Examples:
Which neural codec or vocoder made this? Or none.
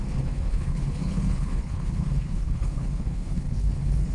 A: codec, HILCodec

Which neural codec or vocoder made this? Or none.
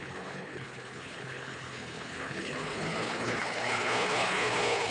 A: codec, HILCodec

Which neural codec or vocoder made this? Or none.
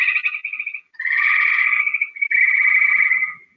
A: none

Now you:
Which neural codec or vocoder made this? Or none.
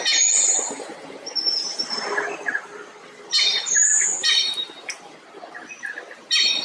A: none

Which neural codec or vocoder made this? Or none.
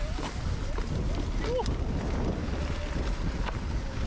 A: none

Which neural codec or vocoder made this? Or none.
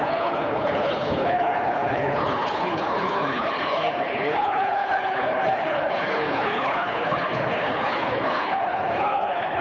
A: codec, HILCodec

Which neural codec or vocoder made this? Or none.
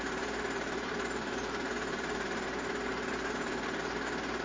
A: none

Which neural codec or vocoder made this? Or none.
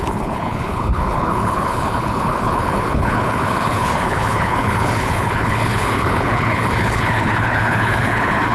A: codec, HILCodec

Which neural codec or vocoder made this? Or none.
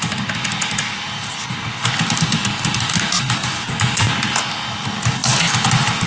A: none